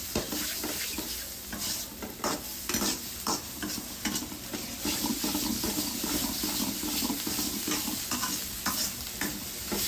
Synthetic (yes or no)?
no